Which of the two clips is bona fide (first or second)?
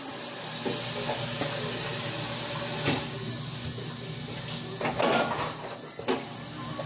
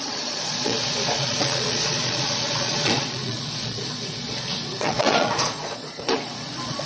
first